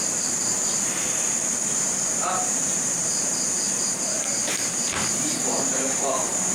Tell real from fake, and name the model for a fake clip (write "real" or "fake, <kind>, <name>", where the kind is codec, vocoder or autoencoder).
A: fake, vocoder, BigVGAN v2